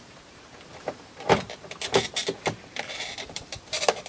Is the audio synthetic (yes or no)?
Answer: yes